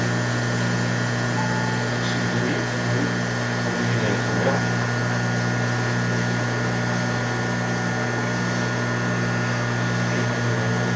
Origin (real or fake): real